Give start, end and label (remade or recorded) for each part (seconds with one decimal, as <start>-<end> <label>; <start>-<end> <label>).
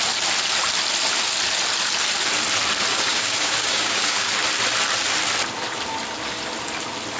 0.0-2.9 recorded; 2.9-4.3 remade; 4.3-7.2 recorded